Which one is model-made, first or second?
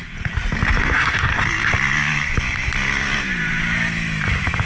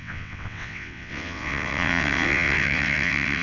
second